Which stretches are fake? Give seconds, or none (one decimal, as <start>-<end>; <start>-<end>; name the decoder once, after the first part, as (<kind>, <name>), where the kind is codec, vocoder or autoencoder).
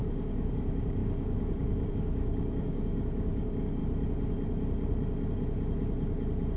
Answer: 0.0-3.8 (codec, DAC)